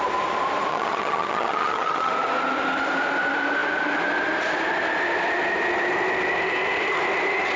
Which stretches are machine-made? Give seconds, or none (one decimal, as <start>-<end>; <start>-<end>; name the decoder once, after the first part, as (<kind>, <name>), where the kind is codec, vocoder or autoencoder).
0.7-2.1 (vocoder, HiFi-GAN)